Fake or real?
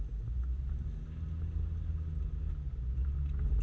real